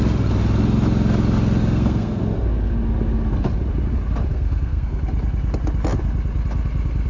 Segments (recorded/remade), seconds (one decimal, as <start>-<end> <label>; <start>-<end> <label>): 0.0-1.6 recorded; 1.6-2.2 remade; 2.2-4.3 recorded; 4.3-5.0 remade; 5.0-7.1 recorded